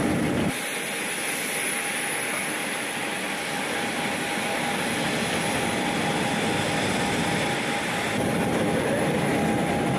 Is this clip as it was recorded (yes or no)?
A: yes